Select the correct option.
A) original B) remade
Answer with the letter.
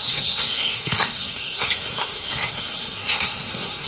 B